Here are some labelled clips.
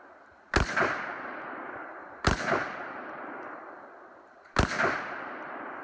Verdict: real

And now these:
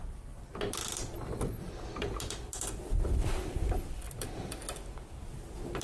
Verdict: real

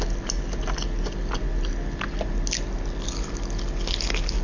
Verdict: real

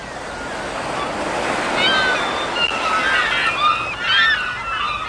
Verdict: real